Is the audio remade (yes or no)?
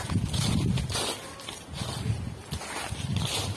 no